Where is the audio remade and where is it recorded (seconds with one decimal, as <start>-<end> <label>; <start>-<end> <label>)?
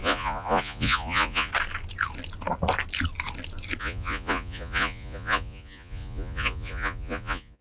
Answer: 0.0-1.5 remade; 1.5-3.8 recorded; 3.8-7.6 remade